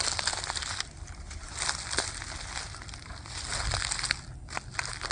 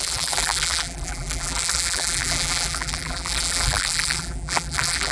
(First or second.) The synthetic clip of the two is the second